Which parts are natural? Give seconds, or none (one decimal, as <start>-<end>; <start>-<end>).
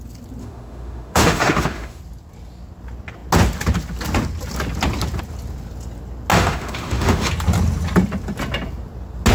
0.0-0.4; 2.0-6.3; 7.3-9.3